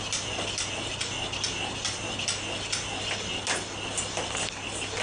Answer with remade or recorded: recorded